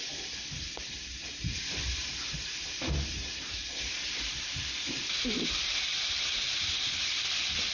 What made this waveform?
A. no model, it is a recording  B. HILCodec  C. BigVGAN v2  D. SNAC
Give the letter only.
C